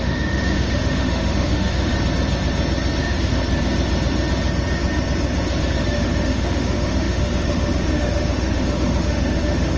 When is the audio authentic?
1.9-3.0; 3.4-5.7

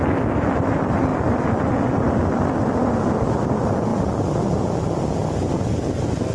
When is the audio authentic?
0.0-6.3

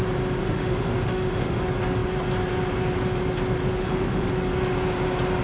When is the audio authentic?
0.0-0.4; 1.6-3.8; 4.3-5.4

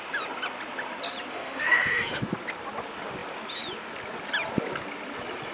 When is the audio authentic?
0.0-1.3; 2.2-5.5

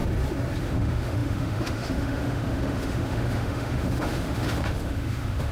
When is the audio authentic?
0.0-0.6